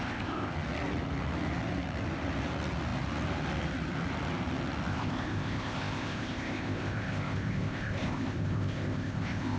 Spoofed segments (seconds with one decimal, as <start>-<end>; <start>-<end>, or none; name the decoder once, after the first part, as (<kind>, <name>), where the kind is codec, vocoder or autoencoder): 0.0-0.5 (codec, ZipCodec); 4.9-9.6